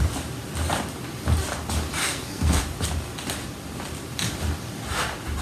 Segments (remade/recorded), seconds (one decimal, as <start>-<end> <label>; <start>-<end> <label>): 0.0-2.0 recorded; 2.0-2.6 remade; 2.6-5.4 recorded

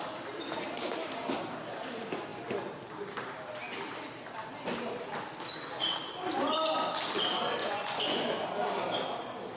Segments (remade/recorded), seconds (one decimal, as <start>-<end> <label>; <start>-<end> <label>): 0.0-7.6 recorded; 7.6-8.5 remade; 8.5-9.6 recorded

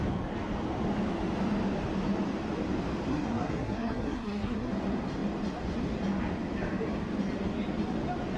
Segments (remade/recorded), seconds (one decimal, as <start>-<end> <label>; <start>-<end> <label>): 0.0-3.1 recorded; 3.1-4.7 remade; 4.7-8.4 recorded

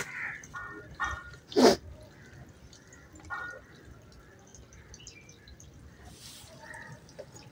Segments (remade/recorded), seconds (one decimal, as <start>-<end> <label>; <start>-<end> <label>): 0.0-7.5 recorded

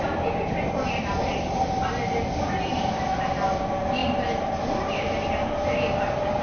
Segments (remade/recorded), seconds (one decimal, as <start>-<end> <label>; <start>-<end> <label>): 0.0-6.4 recorded

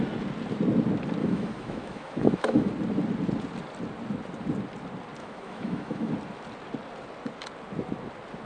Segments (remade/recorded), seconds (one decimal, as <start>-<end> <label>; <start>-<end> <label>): 0.0-1.2 recorded; 1.2-2.7 remade; 2.7-5.2 recorded; 5.2-6.1 remade; 6.1-8.5 recorded

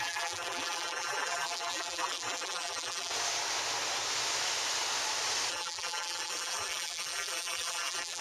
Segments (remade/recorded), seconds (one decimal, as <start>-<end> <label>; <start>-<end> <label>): 0.0-3.1 remade; 3.1-5.5 recorded; 5.5-8.2 remade